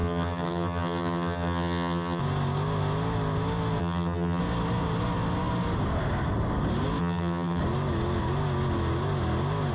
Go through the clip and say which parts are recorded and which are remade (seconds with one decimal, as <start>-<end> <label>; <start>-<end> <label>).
0.0-2.2 remade; 2.2-3.8 recorded; 3.8-4.4 remade; 4.4-7.0 recorded; 7.0-7.6 remade; 7.6-9.7 recorded